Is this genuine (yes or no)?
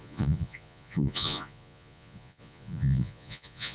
no